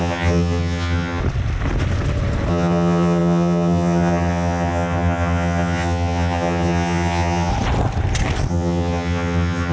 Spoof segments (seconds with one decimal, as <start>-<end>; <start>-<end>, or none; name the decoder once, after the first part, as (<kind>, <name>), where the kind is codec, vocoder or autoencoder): 0.0-1.2 (vocoder, HiFi-GAN); 2.5-7.5; 8.5-9.7